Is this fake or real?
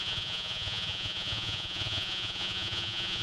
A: fake